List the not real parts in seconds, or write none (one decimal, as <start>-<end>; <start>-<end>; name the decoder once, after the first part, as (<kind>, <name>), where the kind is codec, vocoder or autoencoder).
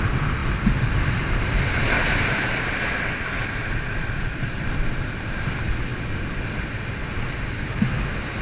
none